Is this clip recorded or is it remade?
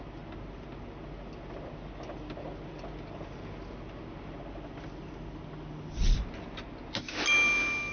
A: recorded